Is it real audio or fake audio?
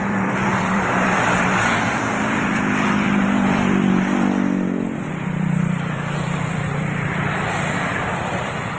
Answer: fake